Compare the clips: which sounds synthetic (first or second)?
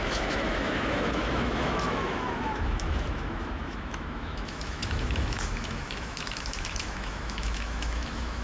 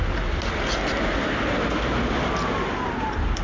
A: first